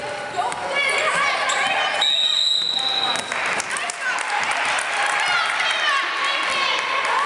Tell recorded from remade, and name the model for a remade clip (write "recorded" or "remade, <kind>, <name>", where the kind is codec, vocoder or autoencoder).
recorded